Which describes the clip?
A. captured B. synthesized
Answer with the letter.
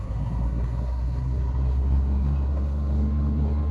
B